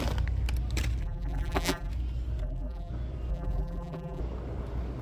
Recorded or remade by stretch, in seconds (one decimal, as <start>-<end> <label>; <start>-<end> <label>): 0.0-1.0 recorded; 1.0-1.9 remade; 1.9-2.4 recorded; 2.4-2.9 remade; 2.9-3.3 recorded; 3.3-4.2 remade; 4.2-5.0 recorded